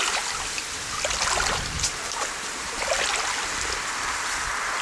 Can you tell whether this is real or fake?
real